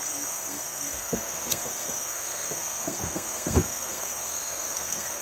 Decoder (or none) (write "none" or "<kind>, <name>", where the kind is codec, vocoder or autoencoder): codec, SNAC